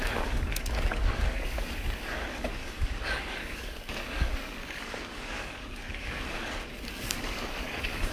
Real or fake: fake